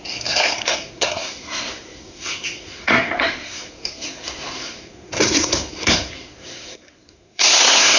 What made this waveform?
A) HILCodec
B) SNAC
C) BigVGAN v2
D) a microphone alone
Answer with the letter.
B